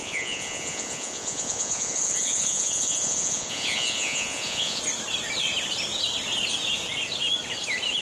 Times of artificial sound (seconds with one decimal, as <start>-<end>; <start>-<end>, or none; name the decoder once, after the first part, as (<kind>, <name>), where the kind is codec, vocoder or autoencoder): 0.0-4.8 (vocoder, Vocos)